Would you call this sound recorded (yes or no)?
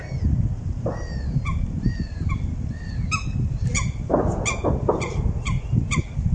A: yes